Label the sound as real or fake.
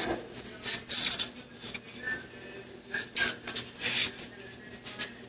real